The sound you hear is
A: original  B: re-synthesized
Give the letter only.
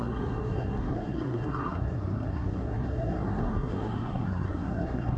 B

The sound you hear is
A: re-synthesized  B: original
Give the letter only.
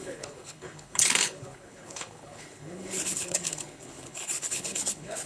A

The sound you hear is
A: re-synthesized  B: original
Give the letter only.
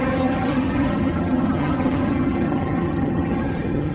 A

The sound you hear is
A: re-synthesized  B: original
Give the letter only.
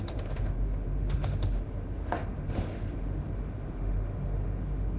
A